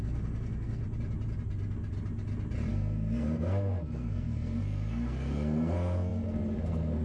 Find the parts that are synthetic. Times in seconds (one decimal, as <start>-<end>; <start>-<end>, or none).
0.0-0.8; 2.7-7.0